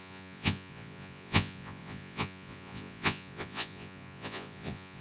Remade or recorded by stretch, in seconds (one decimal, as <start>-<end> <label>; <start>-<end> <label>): 0.0-5.0 remade